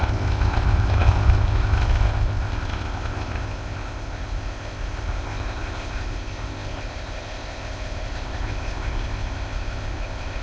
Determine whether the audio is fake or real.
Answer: fake